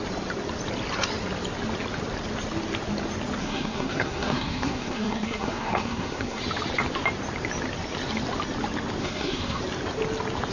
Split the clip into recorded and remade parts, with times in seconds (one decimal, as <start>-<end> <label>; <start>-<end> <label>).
0.0-3.4 recorded; 3.4-6.4 remade; 6.4-9.0 recorded; 9.0-9.6 remade; 9.6-10.5 recorded